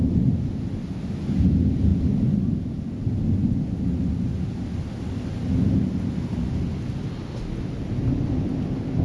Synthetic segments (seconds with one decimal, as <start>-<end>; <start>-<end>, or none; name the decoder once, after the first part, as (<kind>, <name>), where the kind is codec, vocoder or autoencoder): none